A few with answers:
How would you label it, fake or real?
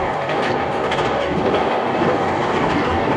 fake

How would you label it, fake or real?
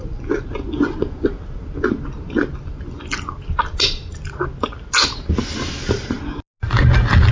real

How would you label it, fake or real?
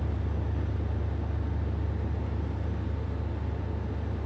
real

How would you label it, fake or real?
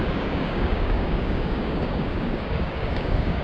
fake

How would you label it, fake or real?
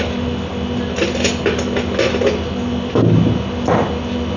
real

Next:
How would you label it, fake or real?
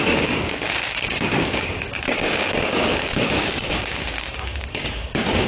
fake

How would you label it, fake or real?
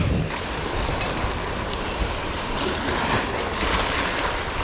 real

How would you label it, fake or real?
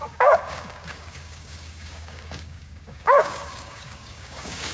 fake